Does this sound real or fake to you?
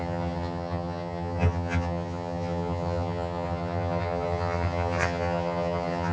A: fake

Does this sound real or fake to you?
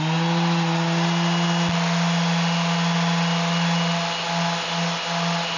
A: real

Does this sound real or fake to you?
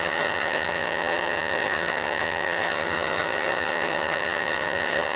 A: fake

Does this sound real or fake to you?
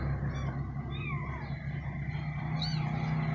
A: real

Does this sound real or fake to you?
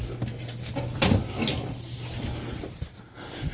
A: real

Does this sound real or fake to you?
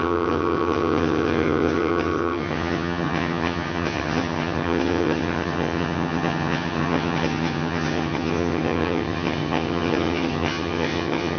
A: fake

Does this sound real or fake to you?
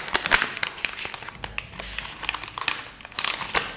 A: real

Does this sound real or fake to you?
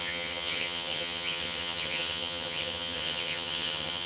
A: fake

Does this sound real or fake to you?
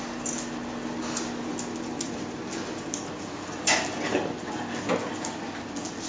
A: real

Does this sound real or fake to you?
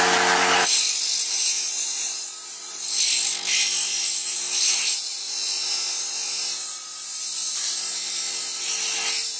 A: real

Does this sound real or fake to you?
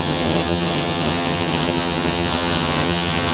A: fake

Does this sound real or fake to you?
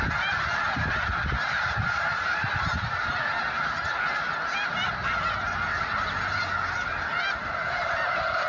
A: real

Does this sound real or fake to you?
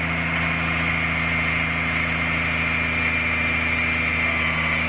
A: real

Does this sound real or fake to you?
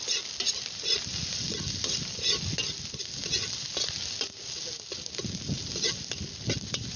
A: real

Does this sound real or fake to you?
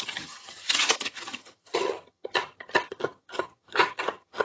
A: fake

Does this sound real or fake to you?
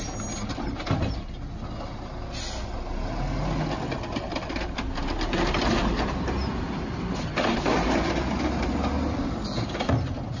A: real